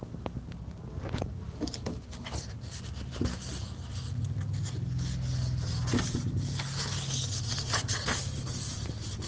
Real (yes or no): yes